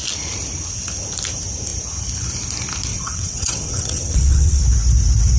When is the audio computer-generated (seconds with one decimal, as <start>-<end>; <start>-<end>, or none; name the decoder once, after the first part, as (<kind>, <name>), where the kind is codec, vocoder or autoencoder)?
2.9-4.6 (vocoder, WaveNeXt)